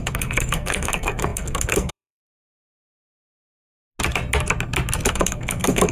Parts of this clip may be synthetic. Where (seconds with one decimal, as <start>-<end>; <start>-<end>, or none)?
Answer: 0.0-3.5; 5.1-5.9